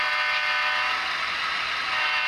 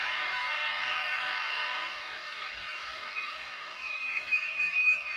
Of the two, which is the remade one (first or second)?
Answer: second